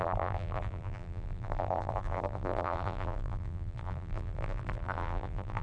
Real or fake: fake